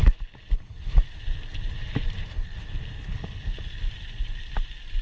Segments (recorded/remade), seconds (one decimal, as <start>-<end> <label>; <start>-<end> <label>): 0.0-5.0 recorded